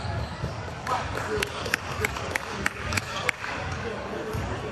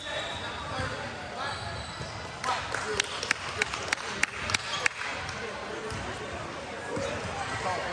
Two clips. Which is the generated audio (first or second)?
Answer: first